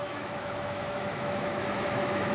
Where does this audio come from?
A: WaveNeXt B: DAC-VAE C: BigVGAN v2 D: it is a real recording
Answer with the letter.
B